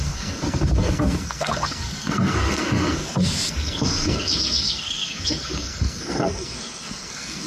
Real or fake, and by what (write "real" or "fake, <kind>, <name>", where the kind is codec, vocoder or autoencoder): fake, codec, SNAC